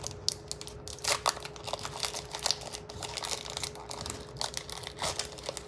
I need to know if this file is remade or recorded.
recorded